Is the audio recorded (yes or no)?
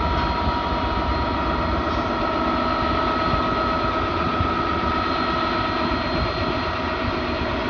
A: yes